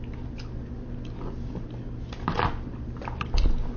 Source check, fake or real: real